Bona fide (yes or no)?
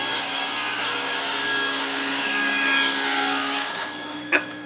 no